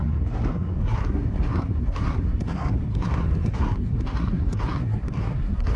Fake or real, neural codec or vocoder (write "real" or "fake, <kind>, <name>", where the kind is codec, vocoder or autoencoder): fake, codec, SNAC